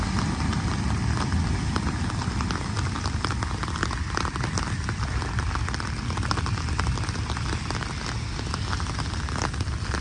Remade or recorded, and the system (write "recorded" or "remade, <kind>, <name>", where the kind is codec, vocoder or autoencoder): recorded